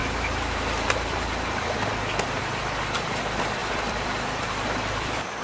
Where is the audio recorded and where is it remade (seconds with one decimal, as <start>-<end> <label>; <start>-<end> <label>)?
0.0-3.6 recorded; 3.6-5.4 remade